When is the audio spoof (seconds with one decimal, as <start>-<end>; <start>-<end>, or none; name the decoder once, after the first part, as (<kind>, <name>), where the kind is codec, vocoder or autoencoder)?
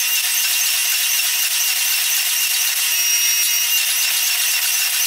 0.0-5.1 (vocoder, BigVGAN v2)